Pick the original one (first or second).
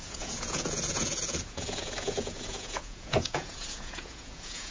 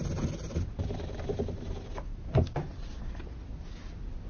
second